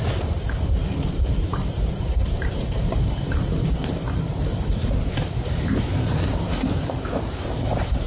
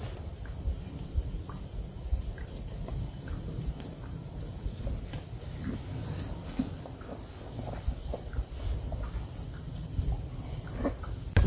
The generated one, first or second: first